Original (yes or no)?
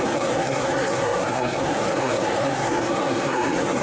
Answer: no